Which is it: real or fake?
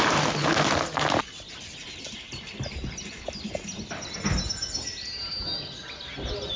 real